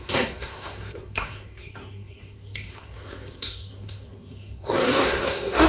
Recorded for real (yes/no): no